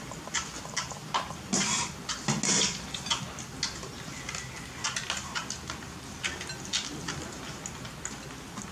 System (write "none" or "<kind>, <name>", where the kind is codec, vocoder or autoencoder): none